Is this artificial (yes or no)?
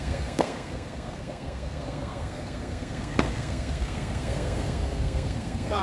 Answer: yes